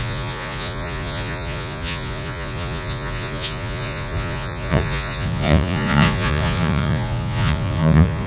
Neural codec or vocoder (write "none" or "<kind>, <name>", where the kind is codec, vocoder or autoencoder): vocoder, Vocos